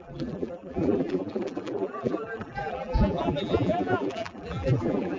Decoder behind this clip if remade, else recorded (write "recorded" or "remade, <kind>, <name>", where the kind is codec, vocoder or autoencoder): remade, vocoder, BigVGAN v2